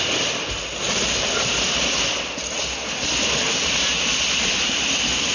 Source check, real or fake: real